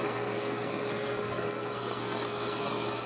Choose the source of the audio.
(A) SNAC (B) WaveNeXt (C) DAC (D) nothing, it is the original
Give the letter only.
A